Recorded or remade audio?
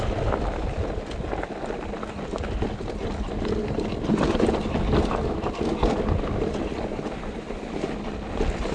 recorded